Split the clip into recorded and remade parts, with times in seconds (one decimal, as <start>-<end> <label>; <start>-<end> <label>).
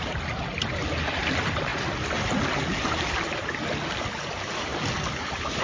0.0-5.6 recorded